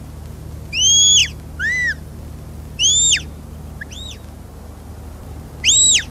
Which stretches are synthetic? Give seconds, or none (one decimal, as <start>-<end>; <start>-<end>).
none